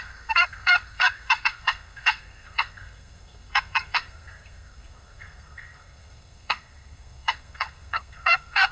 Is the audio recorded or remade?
remade